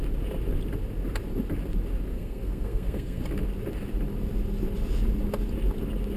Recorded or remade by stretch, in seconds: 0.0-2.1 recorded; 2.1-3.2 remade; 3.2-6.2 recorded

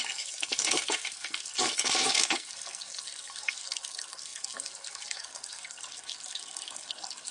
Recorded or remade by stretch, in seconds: 0.0-7.3 remade

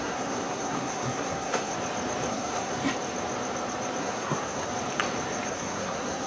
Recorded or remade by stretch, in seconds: 0.0-1.7 remade; 1.7-2.3 recorded; 2.3-2.8 remade; 2.8-4.0 recorded; 4.0-4.7 remade; 4.7-5.5 recorded; 5.5-6.3 remade

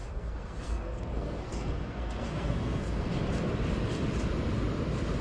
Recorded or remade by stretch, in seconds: 0.0-3.1 remade; 3.1-5.2 recorded

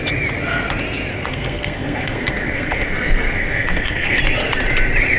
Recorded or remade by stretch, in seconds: 0.0-1.1 recorded; 1.1-4.2 remade; 4.2-5.2 recorded

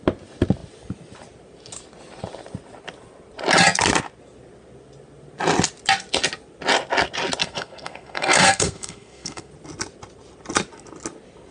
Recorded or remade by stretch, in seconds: 0.0-7.4 recorded; 7.4-9.5 remade; 9.5-11.5 recorded